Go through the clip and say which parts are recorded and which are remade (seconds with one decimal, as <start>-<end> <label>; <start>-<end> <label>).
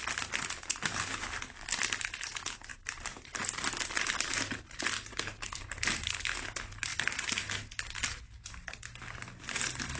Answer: 0.0-5.1 recorded; 5.1-5.6 remade; 5.6-10.0 recorded